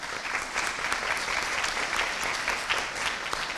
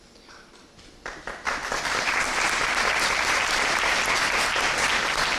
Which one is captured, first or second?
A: first